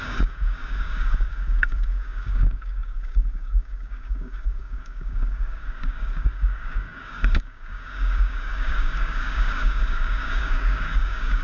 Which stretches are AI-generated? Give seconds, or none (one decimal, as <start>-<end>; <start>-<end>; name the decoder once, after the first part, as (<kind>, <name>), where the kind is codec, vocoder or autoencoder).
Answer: 0.0-11.4 (codec, DAC)